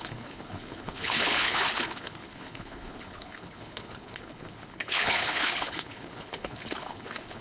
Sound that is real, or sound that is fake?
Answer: fake